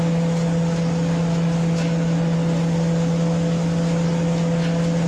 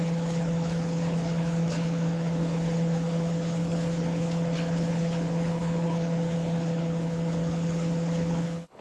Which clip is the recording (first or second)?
first